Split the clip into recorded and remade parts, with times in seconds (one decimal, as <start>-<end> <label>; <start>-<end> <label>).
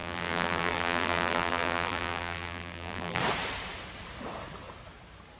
0.0-3.2 remade; 3.2-5.4 recorded